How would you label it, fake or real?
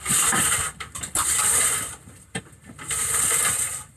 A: real